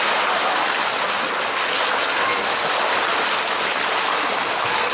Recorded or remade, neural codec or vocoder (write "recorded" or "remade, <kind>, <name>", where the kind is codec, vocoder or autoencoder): recorded